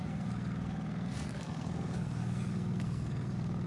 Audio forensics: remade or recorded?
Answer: remade